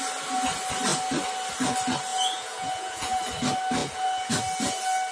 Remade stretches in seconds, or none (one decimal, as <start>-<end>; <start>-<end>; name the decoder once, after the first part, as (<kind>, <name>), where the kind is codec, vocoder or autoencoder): 2.1-3.2 (vocoder, Vocos); 3.8-4.3